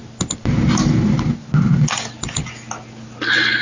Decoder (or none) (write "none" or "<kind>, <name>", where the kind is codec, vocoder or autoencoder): none